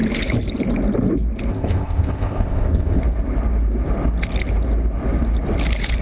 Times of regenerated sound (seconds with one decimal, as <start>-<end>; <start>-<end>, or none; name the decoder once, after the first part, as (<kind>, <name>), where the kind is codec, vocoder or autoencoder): 1.5-3.0 (codec, ZipCodec)

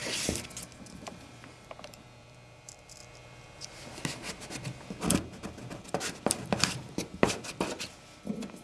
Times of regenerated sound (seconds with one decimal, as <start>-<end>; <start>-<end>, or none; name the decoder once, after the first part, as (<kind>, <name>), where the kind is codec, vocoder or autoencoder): 0.8-3.0 (vocoder, BigVGAN v2); 5.1-8.6

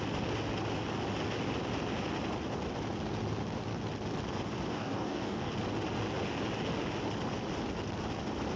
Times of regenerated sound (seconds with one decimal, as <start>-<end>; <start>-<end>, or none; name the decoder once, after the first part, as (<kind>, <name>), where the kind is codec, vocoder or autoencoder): 4.7-5.5 (codec, DAC)

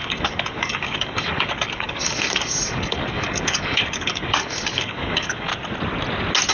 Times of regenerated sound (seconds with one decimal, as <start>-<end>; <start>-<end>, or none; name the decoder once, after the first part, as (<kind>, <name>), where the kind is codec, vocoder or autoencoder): 0.0-5.5 (codec, DAC)

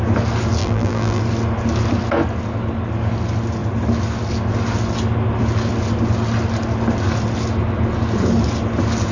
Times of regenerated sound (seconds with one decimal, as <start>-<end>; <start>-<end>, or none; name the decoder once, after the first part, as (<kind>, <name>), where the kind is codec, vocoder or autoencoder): 0.6-1.2 (vocoder, BigVGAN v2)

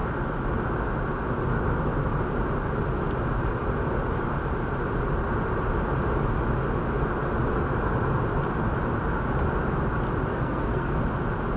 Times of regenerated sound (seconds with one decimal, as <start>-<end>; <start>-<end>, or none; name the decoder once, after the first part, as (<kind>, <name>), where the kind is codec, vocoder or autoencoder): 10.3-11.0 (codec, SNAC)

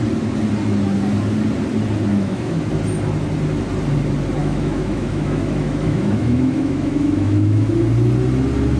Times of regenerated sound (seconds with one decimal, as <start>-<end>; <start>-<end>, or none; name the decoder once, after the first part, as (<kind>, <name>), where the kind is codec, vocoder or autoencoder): 2.1-2.7 (autoencoder, DAC-VAE); 4.4-7.7

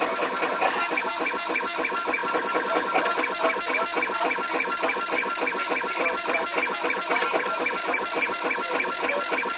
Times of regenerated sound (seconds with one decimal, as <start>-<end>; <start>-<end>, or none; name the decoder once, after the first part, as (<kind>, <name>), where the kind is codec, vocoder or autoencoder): none